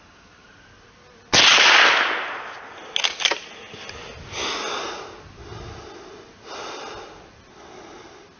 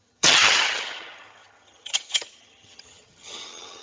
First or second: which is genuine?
first